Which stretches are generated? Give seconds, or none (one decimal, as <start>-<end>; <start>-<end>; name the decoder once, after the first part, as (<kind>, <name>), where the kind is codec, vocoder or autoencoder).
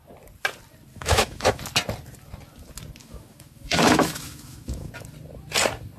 0.9-1.6 (autoencoder, DAC-VAE); 3.0-4.9